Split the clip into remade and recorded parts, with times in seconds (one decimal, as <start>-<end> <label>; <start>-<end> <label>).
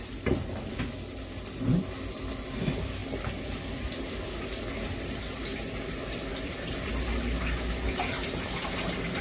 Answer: 0.0-6.3 recorded; 6.3-6.9 remade; 6.9-9.2 recorded